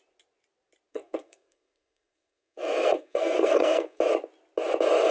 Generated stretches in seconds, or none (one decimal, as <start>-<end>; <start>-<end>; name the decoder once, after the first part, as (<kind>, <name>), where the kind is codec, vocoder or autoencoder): 0.9-4.0 (codec, SNAC)